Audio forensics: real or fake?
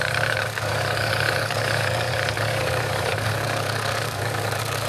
fake